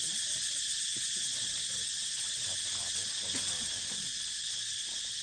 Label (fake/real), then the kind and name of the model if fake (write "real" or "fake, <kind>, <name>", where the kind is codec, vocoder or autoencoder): real